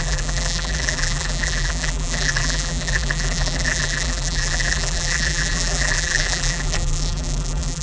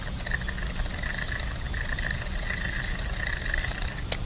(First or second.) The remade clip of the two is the first